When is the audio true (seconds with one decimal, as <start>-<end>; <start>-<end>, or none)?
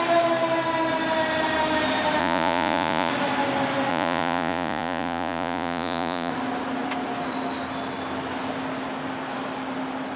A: 0.0-2.2; 3.1-3.9; 6.3-10.2